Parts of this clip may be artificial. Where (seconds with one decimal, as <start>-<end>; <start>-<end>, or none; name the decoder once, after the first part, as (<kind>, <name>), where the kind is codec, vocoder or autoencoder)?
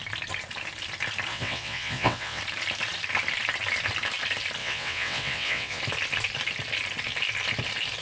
1.3-2.4 (vocoder, WaveNeXt); 4.6-5.8